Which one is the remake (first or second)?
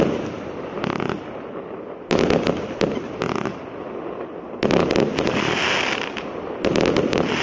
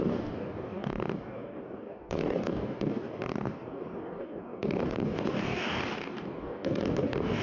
second